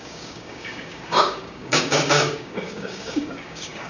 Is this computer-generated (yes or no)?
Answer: yes